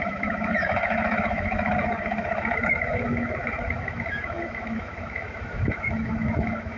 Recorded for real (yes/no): no